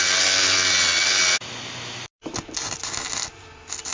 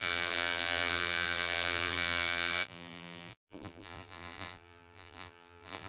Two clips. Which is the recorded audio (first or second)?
first